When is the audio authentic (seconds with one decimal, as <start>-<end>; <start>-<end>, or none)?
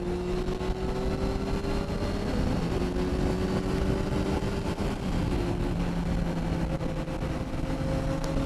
0.0-8.5